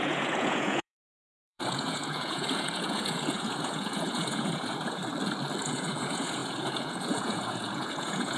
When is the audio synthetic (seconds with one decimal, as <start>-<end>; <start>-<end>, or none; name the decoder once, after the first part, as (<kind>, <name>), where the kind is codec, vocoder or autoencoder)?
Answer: 0.0-5.0 (vocoder, Vocos); 5.6-8.4